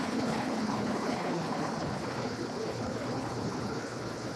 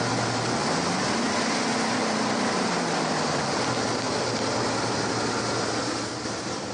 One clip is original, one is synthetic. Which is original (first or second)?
second